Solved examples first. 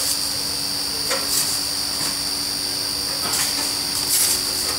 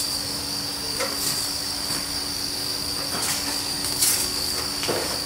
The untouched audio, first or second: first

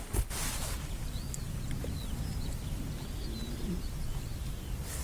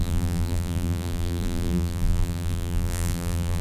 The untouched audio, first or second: first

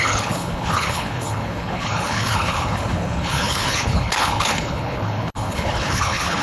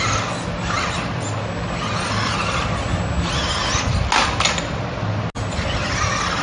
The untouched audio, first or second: second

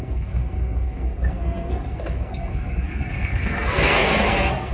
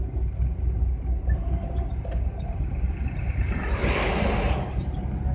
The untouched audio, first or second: second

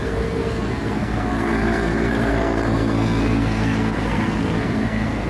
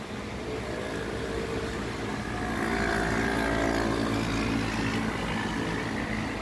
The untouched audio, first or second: second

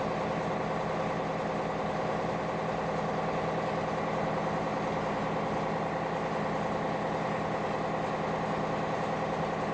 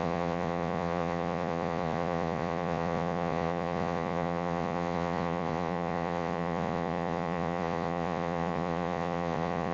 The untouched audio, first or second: first